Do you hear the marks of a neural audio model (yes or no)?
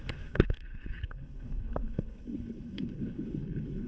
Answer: yes